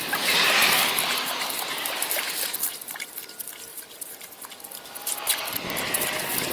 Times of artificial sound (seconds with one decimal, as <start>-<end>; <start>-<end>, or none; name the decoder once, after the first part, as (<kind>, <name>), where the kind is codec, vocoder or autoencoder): 0.6-2.5 (vocoder, BigVGAN v2); 3.7-4.2